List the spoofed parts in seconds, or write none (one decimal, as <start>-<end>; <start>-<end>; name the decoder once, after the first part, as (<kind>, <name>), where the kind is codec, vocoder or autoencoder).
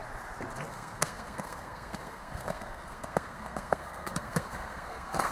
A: 0.7-5.3 (codec, SNAC)